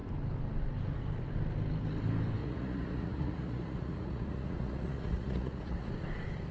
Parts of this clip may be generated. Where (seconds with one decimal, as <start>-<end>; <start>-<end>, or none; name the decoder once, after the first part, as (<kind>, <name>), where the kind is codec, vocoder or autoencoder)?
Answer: 2.4-5.9 (vocoder, Vocos)